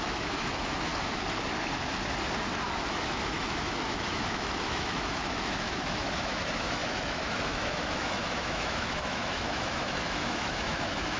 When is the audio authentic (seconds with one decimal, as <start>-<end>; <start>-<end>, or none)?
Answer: 0.9-2.9